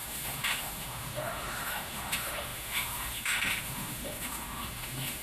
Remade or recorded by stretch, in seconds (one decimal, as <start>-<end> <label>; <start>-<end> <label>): 0.0-5.2 remade